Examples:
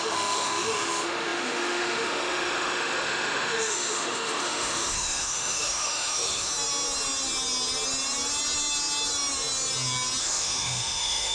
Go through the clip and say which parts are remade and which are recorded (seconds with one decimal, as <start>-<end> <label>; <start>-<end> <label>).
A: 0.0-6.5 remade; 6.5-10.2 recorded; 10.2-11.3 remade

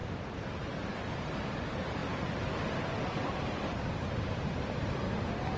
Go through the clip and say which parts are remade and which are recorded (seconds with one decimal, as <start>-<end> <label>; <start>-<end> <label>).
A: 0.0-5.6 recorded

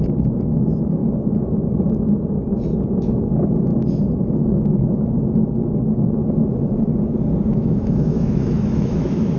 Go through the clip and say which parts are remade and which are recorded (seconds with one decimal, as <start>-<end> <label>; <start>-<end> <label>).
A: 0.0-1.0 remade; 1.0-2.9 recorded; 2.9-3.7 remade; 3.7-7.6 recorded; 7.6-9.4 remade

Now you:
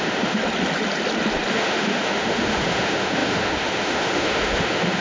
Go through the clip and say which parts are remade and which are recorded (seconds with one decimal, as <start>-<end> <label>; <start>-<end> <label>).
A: 0.0-0.4 remade; 0.4-1.5 recorded; 1.5-5.0 remade

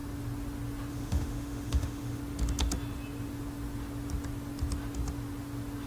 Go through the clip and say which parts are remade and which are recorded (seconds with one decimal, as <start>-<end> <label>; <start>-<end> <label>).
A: 0.0-0.9 recorded; 0.9-2.2 remade; 2.2-5.9 recorded

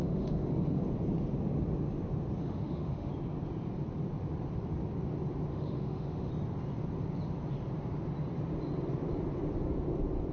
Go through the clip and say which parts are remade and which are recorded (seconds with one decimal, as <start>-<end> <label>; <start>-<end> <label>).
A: 0.0-0.8 remade; 0.8-2.4 recorded; 2.4-3.1 remade; 3.1-5.5 recorded; 5.5-6.3 remade; 6.3-10.3 recorded

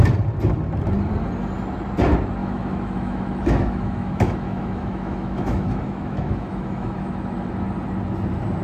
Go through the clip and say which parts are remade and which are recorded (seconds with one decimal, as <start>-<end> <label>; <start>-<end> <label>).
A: 0.0-2.4 recorded; 2.4-7.5 remade; 7.5-8.6 recorded